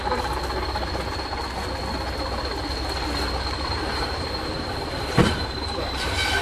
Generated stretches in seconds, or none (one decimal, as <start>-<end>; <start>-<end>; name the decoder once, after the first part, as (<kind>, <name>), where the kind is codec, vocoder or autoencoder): 3.6-6.4 (vocoder, BigVGAN v2)